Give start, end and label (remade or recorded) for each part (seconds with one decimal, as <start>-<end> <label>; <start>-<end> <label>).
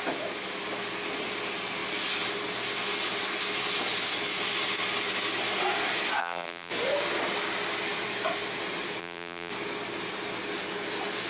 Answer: 0.0-6.2 recorded; 6.2-6.7 remade; 6.7-9.0 recorded; 9.0-9.5 remade; 9.5-11.3 recorded